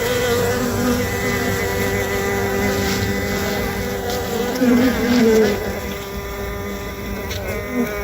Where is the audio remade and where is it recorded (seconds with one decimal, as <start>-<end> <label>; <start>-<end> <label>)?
0.0-8.0 recorded